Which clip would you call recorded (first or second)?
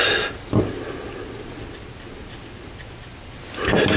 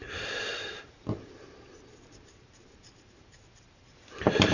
first